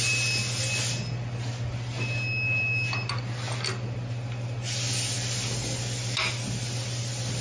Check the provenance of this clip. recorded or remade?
recorded